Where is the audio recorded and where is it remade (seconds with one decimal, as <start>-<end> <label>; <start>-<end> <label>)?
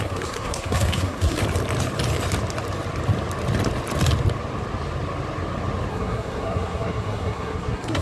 0.0-1.4 remade; 1.4-5.9 recorded; 5.9-8.0 remade